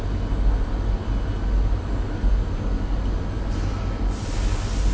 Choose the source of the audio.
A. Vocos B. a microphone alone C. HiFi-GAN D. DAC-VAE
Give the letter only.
B